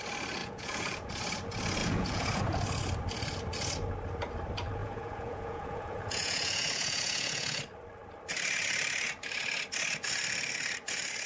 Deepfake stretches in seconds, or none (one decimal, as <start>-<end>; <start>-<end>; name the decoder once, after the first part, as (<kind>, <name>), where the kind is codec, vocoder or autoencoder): 0.4-1.1 (vocoder, Vocos); 1.8-2.4; 4.8-7.6